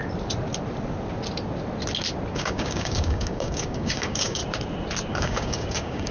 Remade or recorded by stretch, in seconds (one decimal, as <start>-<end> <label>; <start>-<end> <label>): 0.0-2.3 recorded; 2.3-4.4 remade; 4.4-5.1 recorded; 5.1-6.1 remade